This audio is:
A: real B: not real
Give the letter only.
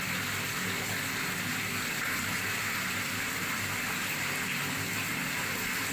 A